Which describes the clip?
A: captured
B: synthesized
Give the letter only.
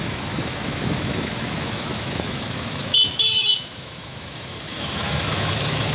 B